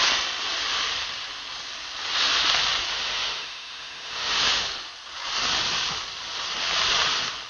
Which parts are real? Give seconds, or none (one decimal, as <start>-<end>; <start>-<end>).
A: 0.0-2.9; 4.6-7.5